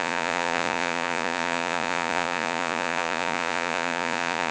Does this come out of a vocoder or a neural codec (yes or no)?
yes